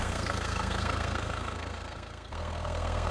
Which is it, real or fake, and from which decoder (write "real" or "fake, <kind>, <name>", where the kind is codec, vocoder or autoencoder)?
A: fake, codec, SNAC